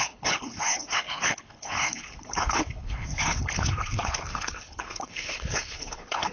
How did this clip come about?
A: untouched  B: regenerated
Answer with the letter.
B